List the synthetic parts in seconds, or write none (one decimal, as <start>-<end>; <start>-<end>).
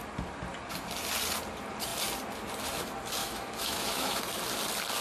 3.2-4.2